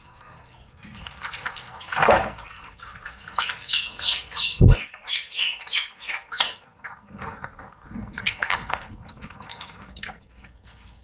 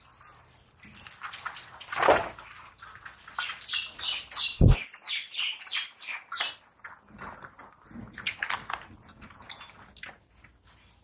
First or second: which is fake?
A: first